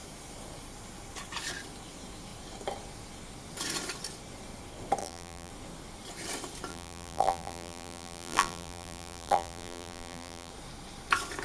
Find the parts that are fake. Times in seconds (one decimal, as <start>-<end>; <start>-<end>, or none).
5.0-5.5; 6.7-10.5